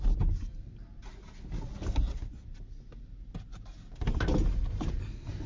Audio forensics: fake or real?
real